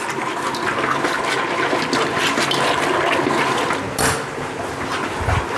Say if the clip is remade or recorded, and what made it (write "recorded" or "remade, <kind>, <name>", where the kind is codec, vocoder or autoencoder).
recorded